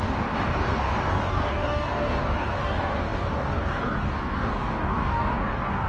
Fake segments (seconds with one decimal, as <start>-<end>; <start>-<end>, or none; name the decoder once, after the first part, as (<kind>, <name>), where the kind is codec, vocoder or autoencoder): 0.0-5.9 (codec, DAC)